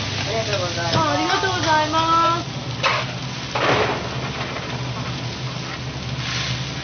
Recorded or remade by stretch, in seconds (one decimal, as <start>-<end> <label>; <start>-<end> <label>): 0.0-6.8 recorded

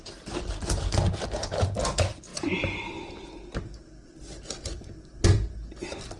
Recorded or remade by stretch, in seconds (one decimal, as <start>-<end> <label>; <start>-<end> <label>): 0.0-6.2 recorded